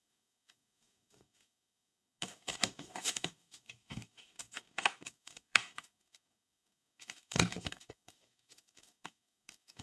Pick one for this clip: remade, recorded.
remade